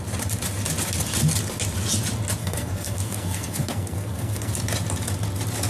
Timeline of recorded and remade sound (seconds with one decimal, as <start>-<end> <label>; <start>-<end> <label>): 0.0-2.4 recorded; 2.4-4.5 remade; 4.5-5.7 recorded